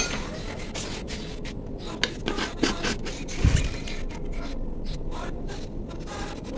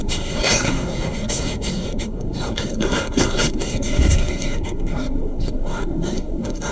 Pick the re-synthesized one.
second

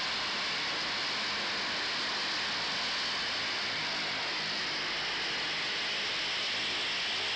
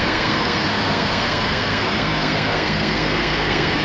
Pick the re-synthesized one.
second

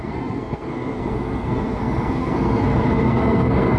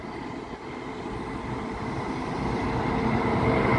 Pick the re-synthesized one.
first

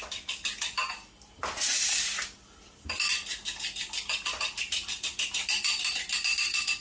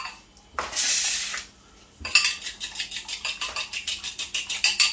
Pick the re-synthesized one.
first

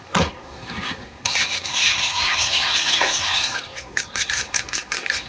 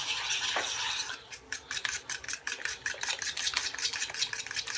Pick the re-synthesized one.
first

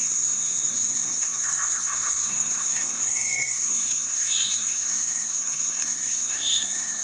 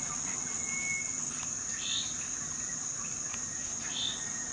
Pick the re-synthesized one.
first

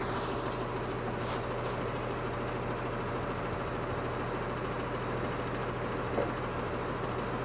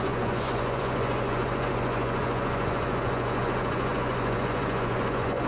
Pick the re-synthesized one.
second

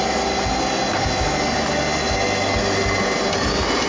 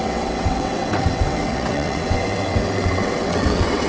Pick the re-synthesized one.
second